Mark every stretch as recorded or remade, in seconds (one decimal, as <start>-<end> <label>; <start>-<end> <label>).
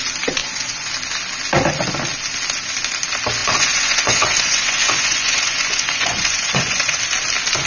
0.0-0.4 recorded; 0.4-0.9 remade; 0.9-3.4 recorded; 3.4-7.0 remade; 7.0-7.7 recorded